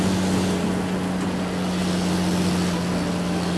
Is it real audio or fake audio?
real